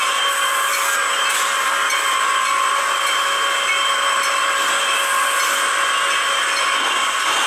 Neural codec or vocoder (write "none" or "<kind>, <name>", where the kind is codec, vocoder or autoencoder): none